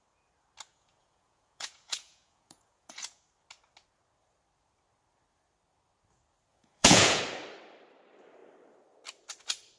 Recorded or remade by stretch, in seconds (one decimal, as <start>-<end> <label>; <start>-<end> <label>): 0.0-0.7 recorded; 0.7-3.2 remade; 3.2-6.5 recorded; 6.5-7.2 remade; 7.2-9.8 recorded